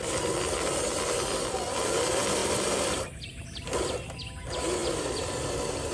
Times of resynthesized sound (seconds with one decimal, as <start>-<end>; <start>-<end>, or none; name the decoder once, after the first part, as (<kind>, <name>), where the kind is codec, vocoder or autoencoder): none

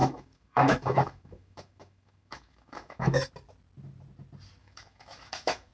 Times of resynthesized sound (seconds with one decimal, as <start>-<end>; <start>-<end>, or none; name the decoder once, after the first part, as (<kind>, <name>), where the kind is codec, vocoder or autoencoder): 0.0-3.3 (autoencoder, DAC-VAE); 4.6-5.7

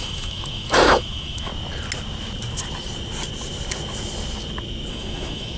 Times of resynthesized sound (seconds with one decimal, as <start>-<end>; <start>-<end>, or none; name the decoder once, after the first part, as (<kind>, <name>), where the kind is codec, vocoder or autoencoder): 0.0-1.5 (autoencoder, DAC-VAE); 4.9-5.6

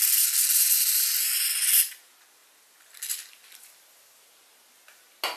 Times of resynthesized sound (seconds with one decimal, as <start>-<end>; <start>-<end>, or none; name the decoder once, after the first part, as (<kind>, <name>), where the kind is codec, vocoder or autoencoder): none

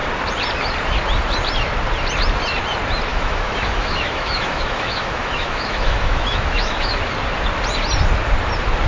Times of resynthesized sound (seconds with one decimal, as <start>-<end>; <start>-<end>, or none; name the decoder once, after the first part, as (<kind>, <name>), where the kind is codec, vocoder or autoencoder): 3.1-7.0 (autoencoder, DAC-VAE)

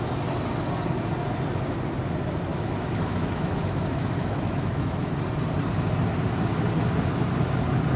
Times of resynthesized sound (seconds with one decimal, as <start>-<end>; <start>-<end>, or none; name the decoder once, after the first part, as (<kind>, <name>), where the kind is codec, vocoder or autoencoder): 2.5-5.1 (autoencoder, DAC-VAE)

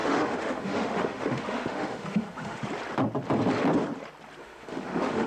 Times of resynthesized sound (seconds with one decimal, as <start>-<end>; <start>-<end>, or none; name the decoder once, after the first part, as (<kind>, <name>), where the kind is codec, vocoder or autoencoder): 0.0-2.6 (autoencoder, DAC-VAE); 4.4-5.3